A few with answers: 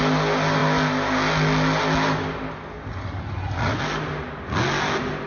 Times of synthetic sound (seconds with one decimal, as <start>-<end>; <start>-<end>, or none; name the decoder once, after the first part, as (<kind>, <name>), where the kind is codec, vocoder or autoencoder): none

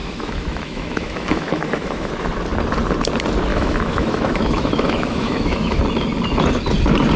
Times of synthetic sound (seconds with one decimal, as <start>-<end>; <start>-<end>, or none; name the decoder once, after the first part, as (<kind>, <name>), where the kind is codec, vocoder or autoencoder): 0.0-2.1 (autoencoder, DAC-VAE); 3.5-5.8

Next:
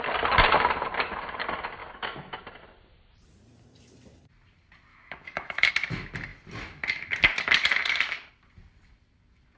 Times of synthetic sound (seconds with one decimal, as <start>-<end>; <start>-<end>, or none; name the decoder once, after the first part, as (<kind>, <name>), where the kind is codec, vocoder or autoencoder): 1.8-2.4 (autoencoder, DAC-VAE); 4.9-5.7

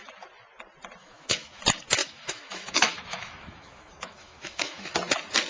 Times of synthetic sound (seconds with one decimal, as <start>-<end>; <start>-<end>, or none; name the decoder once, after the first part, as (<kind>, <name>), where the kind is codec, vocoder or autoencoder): 1.0-1.6 (autoencoder, DAC-VAE); 2.0-4.9